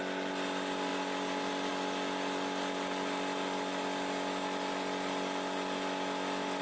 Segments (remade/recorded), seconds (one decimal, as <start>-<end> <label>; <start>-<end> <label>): 0.0-6.6 recorded